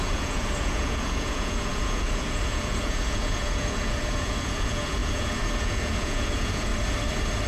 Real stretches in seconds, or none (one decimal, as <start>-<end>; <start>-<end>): 6.7-7.5